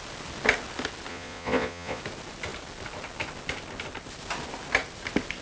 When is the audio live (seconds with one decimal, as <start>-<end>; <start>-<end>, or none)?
0.0-1.1; 2.0-5.4